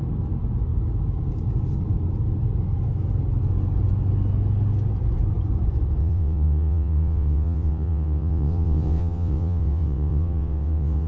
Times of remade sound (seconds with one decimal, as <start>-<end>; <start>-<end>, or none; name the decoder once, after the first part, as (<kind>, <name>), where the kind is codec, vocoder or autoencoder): 6.0-11.1 (vocoder, WaveNeXt)